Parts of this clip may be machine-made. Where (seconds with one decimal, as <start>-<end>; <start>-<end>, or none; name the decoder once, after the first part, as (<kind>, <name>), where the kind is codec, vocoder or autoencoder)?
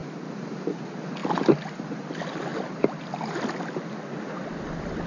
none